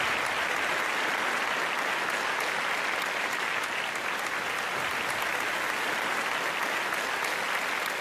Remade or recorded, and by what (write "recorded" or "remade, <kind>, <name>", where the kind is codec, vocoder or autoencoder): recorded